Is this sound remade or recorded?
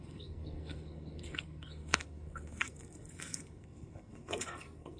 remade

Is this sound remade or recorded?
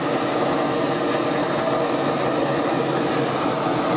recorded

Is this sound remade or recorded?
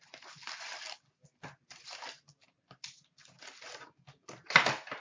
recorded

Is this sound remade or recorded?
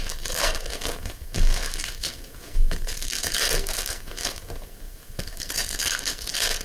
remade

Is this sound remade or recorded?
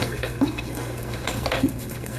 remade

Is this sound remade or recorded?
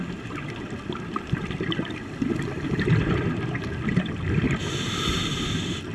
recorded